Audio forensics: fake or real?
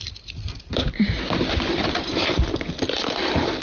fake